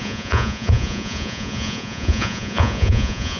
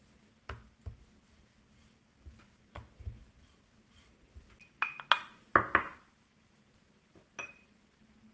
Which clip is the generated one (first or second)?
first